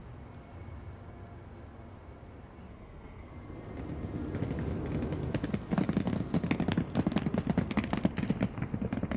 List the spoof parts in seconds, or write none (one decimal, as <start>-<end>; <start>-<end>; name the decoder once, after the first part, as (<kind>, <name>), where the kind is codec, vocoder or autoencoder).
2.7-3.3 (codec, SNAC)